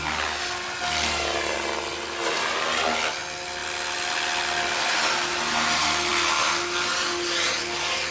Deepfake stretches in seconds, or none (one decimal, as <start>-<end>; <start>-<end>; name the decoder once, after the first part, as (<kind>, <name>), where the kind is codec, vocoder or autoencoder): none